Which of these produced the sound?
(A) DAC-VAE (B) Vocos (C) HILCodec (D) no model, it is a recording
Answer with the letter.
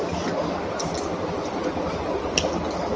D